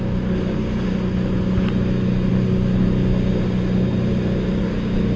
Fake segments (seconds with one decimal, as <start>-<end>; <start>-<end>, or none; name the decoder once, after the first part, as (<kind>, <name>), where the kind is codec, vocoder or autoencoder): none